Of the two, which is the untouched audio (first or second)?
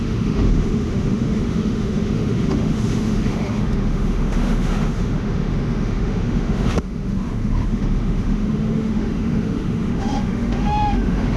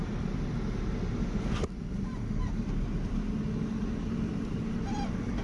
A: second